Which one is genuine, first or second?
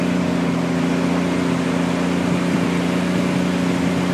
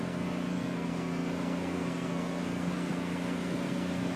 first